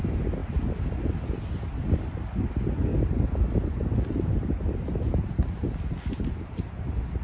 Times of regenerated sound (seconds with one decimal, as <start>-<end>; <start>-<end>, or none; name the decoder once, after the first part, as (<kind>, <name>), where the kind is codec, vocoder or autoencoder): none